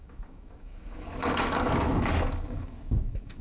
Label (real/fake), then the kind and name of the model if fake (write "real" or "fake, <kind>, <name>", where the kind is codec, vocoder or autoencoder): fake, codec, DAC